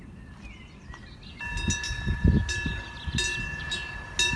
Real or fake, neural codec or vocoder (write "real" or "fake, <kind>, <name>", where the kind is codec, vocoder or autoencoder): real